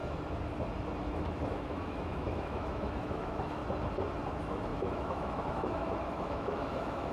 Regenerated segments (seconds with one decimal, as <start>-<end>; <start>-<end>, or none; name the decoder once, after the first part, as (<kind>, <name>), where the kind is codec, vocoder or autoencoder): 1.1-3.6 (autoencoder, DAC-VAE); 4.3-7.1